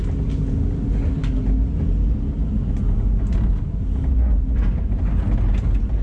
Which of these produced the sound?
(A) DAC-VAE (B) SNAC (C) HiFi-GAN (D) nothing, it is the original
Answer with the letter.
D